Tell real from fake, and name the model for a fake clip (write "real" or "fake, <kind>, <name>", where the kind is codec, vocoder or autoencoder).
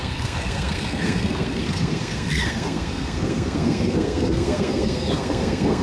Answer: fake, codec, SNAC